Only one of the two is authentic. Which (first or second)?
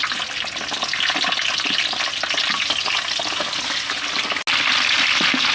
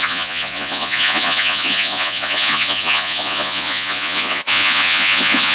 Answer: first